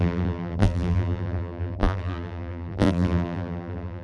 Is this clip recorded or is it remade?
remade